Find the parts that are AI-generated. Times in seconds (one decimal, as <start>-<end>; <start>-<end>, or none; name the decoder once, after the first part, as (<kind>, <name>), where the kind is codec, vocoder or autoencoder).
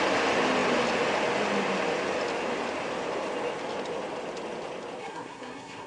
5.0-5.9 (codec, SNAC)